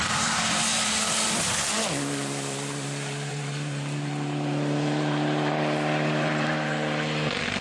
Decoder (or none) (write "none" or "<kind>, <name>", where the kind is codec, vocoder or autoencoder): vocoder, BigVGAN v2